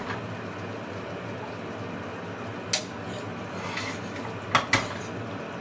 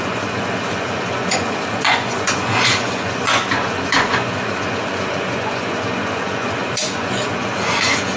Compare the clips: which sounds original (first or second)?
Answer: first